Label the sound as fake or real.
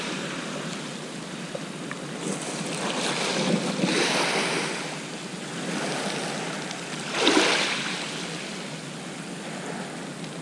real